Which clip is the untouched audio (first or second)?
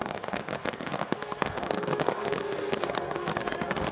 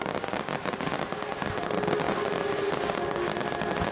second